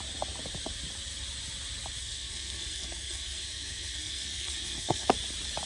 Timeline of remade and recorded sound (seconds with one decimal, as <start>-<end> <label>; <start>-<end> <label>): 0.0-2.0 recorded; 2.0-5.1 remade; 5.1-5.7 recorded

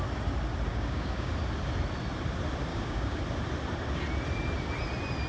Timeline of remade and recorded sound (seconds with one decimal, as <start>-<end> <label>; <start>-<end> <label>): 0.0-0.7 recorded; 0.7-1.3 remade; 1.3-2.7 recorded; 2.7-3.2 remade; 3.2-5.3 recorded

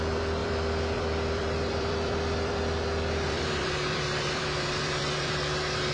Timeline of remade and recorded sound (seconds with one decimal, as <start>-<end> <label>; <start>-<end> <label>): 0.0-5.9 remade

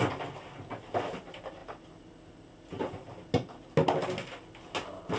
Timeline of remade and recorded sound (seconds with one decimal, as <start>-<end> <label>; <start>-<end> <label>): 0.0-5.2 recorded

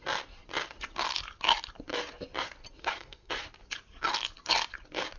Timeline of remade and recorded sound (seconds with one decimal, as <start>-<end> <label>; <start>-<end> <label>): 0.0-2.8 recorded; 2.8-3.3 remade; 3.3-5.2 recorded

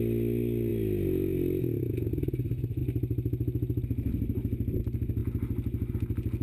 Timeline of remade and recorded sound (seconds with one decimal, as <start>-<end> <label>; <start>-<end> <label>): 0.0-6.4 recorded

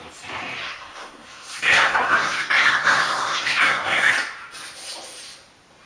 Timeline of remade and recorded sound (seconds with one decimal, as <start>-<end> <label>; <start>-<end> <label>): 0.0-0.6 recorded; 0.6-4.1 remade; 4.1-5.9 recorded

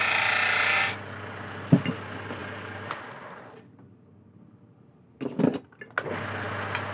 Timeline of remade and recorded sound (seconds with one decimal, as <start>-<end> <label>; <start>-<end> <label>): 0.0-6.9 recorded